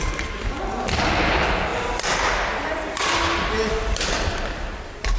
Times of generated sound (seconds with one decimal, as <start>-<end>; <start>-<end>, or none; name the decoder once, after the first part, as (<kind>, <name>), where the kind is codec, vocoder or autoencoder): none